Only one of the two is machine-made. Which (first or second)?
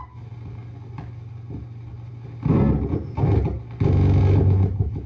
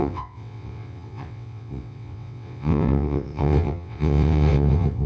second